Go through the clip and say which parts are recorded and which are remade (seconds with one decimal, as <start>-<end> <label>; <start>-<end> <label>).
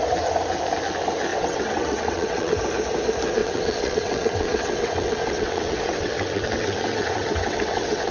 0.0-1.3 recorded; 1.3-2.6 remade; 2.6-3.4 recorded; 3.4-8.1 remade